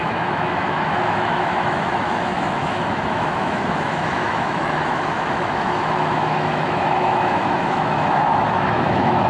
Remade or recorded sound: remade